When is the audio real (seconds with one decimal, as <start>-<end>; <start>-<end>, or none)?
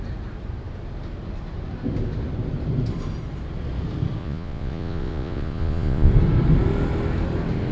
0.0-4.2; 6.1-7.7